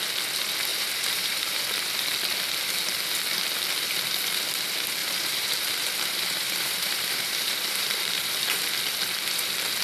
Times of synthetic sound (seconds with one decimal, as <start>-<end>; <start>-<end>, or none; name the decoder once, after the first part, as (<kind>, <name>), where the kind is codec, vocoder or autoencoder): 0.7-1.6 (vocoder, BigVGAN v2); 5.0-8.7